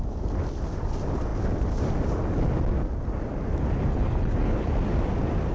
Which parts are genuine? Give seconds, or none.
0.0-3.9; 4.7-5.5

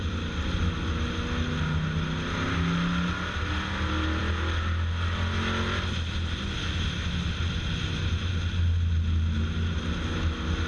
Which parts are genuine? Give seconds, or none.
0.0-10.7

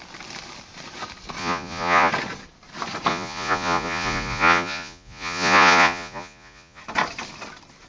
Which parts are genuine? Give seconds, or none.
0.0-1.4; 2.1-3.1; 6.8-7.9